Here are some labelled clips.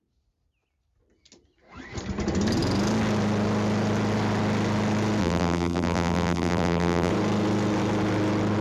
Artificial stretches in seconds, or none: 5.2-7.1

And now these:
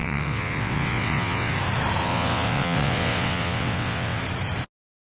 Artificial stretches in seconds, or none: 0.0-1.5; 2.0-4.2